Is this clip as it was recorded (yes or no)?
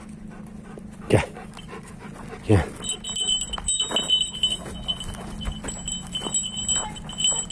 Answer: yes